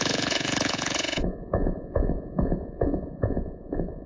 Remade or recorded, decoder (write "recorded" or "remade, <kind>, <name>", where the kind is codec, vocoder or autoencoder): remade, vocoder, Vocos